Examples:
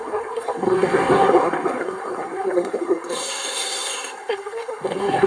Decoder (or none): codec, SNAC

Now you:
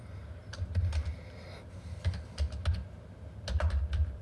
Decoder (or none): none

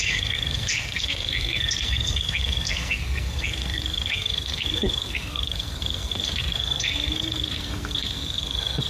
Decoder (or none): codec, SNAC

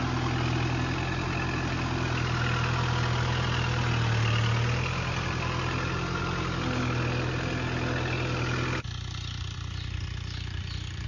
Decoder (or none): none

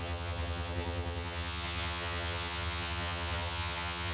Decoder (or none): vocoder, HiFi-GAN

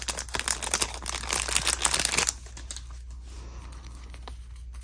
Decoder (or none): none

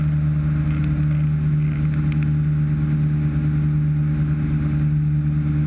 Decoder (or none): none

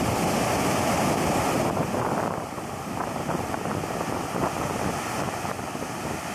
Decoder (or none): none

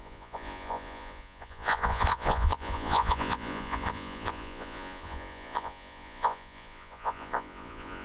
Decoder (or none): vocoder, Vocos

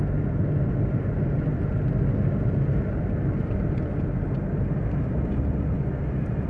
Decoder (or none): none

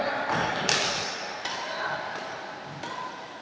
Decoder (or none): none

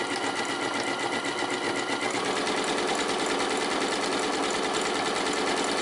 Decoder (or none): none